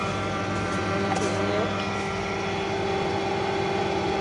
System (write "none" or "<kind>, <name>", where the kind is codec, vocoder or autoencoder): none